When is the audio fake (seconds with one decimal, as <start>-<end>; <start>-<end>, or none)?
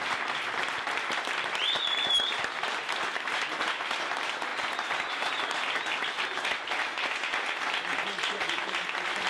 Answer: none